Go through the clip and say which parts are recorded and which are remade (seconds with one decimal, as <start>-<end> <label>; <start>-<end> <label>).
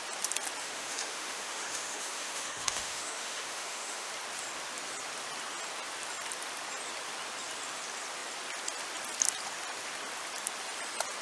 0.0-0.6 recorded; 0.6-4.1 remade; 4.1-11.2 recorded